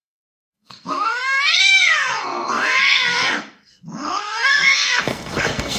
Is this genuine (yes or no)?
no